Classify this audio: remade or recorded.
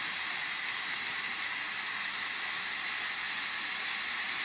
recorded